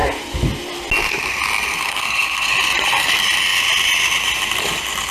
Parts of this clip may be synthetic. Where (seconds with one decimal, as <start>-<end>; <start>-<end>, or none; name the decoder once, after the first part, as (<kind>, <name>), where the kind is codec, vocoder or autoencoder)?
1.7-2.5 (codec, SNAC)